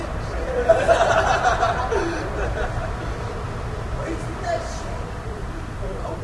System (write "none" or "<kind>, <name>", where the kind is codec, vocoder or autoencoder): vocoder, BigVGAN v2